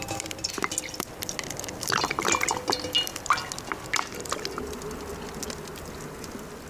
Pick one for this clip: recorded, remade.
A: recorded